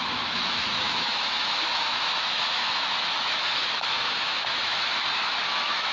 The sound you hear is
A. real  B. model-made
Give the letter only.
B